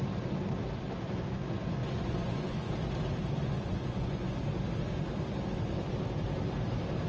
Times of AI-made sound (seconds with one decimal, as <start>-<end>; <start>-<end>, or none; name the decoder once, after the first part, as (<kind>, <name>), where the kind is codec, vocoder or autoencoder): 1.8-2.7 (vocoder, Vocos); 3.4-4.4